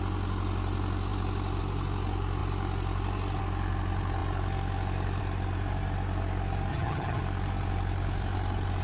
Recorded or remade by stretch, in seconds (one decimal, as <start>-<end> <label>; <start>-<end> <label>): 0.0-6.7 recorded; 6.7-7.2 remade; 7.2-8.8 recorded

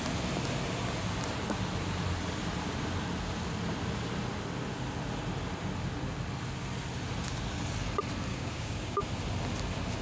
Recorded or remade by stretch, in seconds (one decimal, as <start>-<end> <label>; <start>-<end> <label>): 0.0-8.3 recorded; 8.3-9.0 remade; 9.0-10.0 recorded

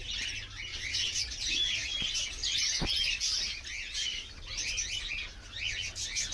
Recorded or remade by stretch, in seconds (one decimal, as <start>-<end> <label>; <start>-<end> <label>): 0.0-0.7 recorded; 0.7-1.2 remade; 1.2-6.3 recorded